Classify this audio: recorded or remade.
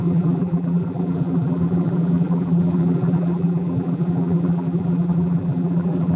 remade